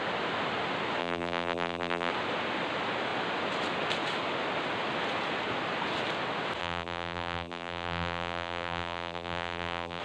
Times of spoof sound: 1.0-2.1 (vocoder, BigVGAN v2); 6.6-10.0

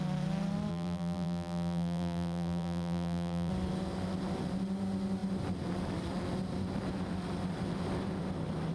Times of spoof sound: 0.7-3.5 (vocoder, BigVGAN v2)

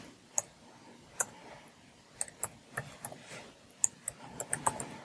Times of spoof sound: none